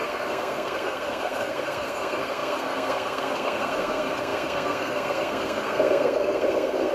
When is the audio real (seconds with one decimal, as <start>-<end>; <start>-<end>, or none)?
none